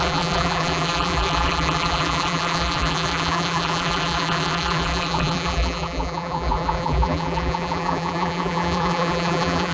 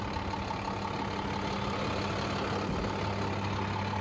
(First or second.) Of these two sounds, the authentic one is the second